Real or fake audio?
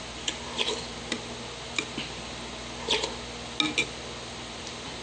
real